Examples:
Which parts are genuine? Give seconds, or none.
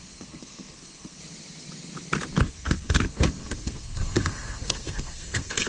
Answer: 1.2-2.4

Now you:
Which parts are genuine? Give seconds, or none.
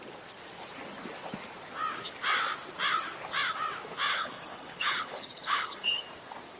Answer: 0.0-4.1; 6.0-6.6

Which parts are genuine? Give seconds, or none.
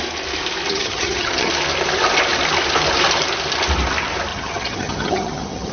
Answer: 0.0-0.7; 1.5-4.3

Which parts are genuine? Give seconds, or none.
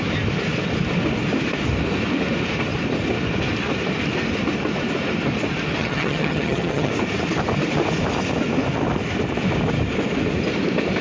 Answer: 0.0-5.8; 6.9-11.0